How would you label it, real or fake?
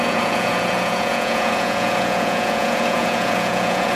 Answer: fake